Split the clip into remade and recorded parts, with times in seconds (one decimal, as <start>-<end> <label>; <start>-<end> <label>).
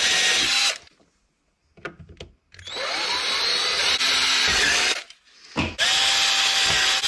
0.0-7.1 recorded